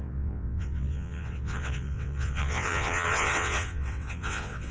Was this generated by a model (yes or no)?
yes